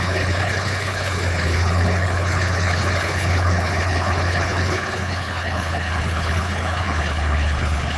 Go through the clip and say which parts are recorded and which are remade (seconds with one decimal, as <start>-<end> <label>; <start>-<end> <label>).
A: 0.0-8.0 remade